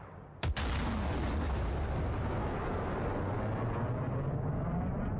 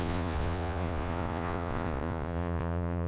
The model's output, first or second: second